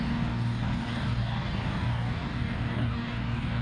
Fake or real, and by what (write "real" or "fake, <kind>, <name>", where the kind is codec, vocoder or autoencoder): fake, codec, DAC